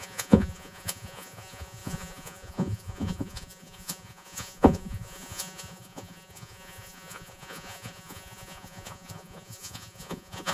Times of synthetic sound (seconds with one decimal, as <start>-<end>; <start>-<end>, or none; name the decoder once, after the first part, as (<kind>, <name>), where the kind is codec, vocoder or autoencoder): 0.0-10.5 (vocoder, Vocos)